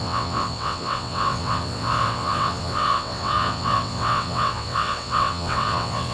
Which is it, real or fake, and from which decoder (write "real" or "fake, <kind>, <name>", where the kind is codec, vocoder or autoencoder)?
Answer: fake, vocoder, WaveNeXt